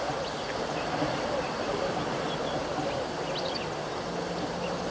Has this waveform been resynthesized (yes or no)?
no